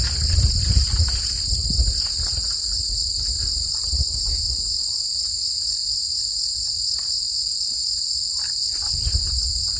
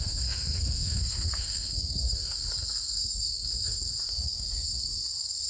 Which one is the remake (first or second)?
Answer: second